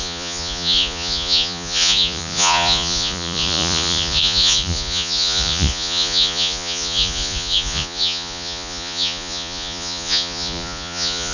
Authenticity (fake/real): fake